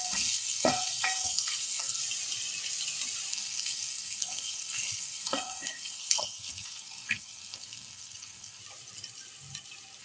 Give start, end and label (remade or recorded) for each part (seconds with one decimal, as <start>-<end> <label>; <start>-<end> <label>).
0.0-2.0 remade; 2.0-3.3 recorded; 3.3-8.6 remade; 8.6-10.0 recorded